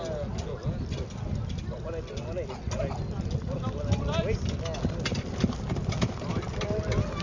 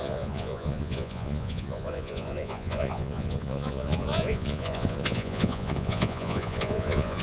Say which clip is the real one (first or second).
first